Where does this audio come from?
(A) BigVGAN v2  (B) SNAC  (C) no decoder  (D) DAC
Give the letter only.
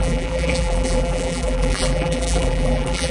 A